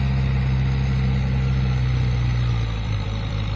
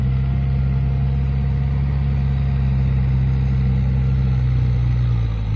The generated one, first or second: first